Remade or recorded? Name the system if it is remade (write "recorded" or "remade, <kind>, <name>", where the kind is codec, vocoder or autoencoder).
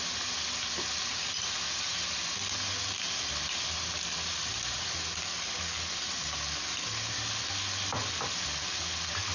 recorded